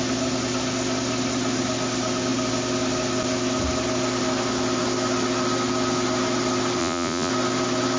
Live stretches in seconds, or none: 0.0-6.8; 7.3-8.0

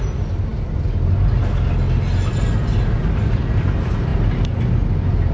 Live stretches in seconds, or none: 0.0-5.3